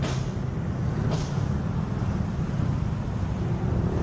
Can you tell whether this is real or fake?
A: real